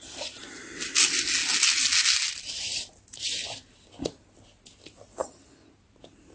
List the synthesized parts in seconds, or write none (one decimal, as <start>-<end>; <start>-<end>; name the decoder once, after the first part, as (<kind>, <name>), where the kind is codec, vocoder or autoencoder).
5.2-5.7 (vocoder, HiFi-GAN)